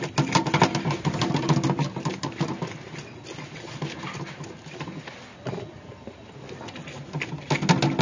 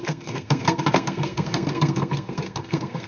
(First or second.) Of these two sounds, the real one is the first